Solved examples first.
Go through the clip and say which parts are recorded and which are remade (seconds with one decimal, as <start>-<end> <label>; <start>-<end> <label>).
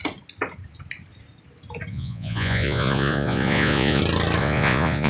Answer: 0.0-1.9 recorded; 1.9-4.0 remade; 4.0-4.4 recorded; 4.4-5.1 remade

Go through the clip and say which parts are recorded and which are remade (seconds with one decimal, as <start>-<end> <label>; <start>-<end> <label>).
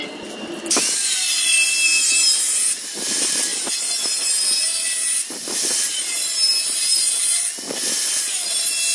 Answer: 0.0-8.9 recorded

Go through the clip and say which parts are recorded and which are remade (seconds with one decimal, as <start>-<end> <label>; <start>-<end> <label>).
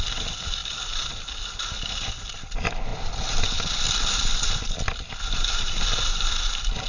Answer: 0.0-6.9 recorded